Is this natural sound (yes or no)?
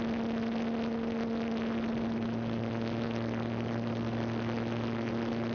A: yes